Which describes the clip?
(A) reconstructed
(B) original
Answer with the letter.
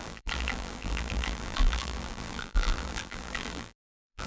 A